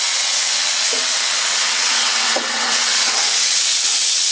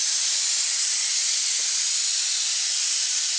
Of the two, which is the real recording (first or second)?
second